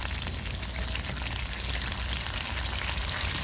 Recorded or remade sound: recorded